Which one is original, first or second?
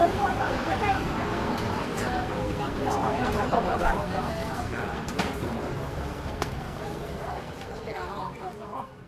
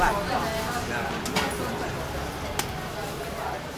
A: second